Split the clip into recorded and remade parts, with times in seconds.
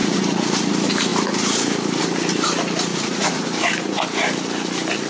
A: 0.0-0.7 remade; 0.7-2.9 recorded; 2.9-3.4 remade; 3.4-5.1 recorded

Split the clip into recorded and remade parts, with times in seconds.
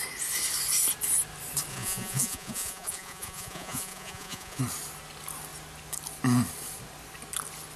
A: 0.0-1.7 recorded; 1.7-4.6 remade; 4.6-7.8 recorded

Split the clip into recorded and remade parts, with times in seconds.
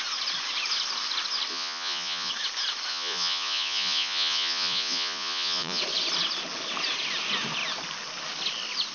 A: 0.0-1.5 recorded; 1.5-2.3 remade; 2.3-2.9 recorded; 2.9-5.8 remade; 5.8-8.9 recorded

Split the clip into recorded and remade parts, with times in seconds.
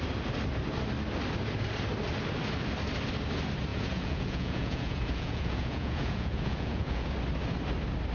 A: 0.0-3.7 recorded; 3.7-7.1 remade; 7.1-8.1 recorded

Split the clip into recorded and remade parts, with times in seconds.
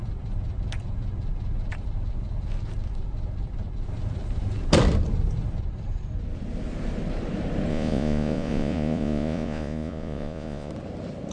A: 0.0-7.7 recorded; 7.7-10.7 remade; 10.7-11.3 recorded